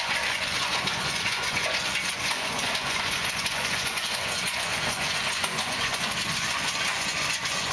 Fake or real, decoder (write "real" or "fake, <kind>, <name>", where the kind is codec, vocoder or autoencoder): fake, vocoder, Vocos